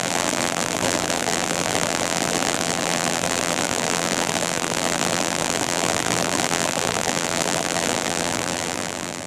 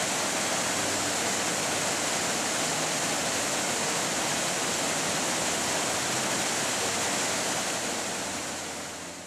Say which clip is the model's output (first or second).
first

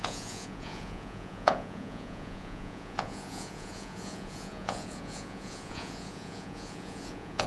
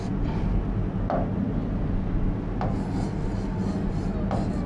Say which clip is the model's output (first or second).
first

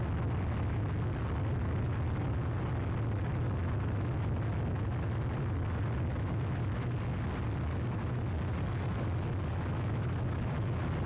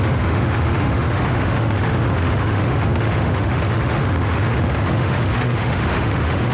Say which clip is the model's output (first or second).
second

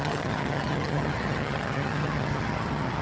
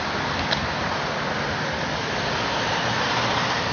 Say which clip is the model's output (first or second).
first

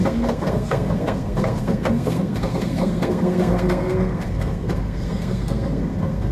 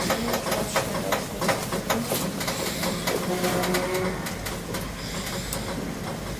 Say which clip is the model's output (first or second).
first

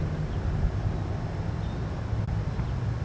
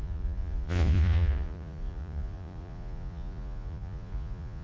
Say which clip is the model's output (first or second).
second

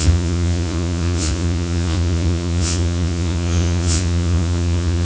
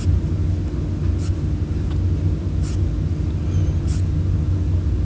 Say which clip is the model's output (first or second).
first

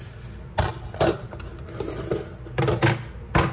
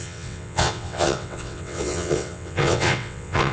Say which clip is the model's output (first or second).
second